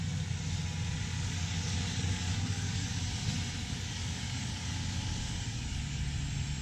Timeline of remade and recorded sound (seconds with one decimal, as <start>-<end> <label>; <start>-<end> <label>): 0.0-1.1 recorded; 1.1-3.1 remade; 3.1-3.6 recorded; 3.6-6.0 remade; 6.0-6.6 recorded